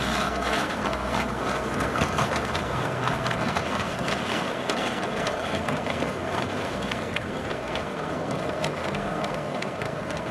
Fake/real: fake